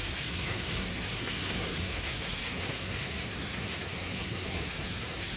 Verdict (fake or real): fake